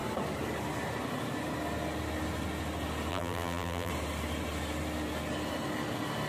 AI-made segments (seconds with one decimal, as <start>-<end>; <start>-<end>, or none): 3.1-3.9